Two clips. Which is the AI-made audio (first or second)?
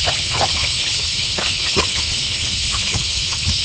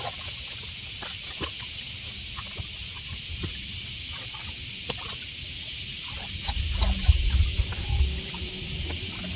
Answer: first